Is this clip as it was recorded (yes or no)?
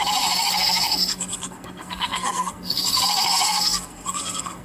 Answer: no